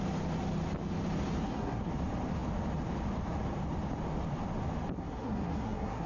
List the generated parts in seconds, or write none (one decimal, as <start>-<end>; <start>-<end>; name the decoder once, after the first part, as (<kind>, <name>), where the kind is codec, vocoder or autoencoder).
1.4-1.9 (codec, SNAC); 5.0-6.1